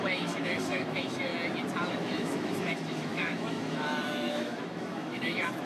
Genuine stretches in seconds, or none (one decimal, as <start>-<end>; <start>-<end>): 1.3-1.9